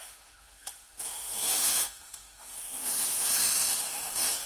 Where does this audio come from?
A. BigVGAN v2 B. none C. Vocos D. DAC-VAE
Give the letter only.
D